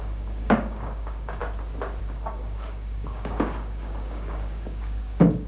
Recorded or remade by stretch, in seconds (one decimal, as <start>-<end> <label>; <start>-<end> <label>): 0.0-1.4 remade; 1.4-2.0 recorded; 2.0-5.5 remade